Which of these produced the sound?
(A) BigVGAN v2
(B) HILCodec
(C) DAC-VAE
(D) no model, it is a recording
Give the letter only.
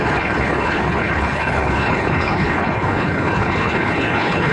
B